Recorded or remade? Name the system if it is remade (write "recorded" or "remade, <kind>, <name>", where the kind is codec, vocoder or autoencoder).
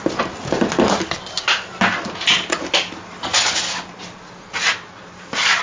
recorded